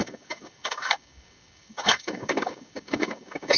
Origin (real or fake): fake